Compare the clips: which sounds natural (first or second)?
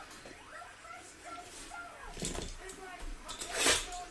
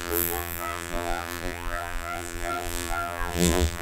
first